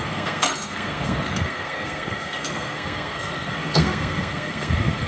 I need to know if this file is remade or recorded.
remade